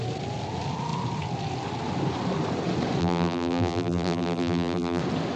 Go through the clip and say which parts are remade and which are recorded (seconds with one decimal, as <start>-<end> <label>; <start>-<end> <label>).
0.0-3.0 recorded; 3.0-5.0 remade; 5.0-5.4 recorded